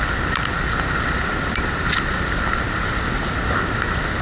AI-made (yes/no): no